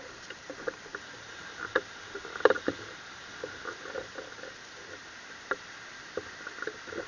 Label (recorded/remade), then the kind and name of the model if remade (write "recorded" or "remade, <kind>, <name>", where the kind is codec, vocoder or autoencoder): remade, vocoder, BigVGAN v2